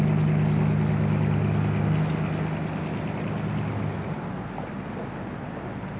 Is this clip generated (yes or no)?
no